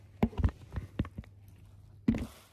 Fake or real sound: real